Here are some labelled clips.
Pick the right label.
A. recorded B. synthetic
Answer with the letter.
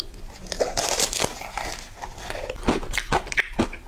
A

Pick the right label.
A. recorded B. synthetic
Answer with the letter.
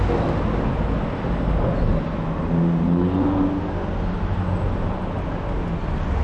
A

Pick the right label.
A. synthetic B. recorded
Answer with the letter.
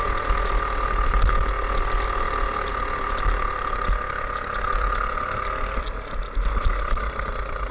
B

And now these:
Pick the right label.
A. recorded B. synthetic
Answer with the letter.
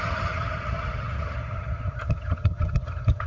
B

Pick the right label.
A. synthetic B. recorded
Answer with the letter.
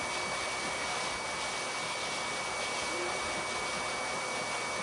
B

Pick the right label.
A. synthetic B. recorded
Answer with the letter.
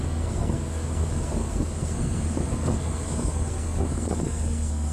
A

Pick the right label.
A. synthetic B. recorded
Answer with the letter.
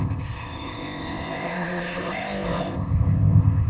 A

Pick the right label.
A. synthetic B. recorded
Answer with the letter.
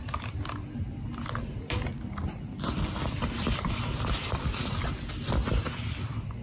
B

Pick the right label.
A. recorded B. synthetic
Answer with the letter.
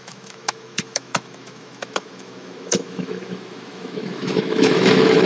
B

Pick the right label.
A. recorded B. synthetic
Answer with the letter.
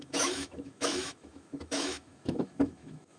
B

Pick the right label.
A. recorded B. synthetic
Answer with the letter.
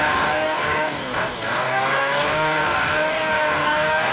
B